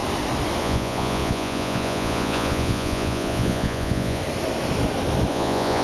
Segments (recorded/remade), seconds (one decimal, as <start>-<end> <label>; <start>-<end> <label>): 0.0-0.6 recorded; 0.6-4.2 remade; 4.2-5.3 recorded; 5.3-5.8 remade